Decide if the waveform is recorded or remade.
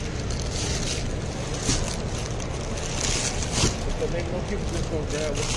recorded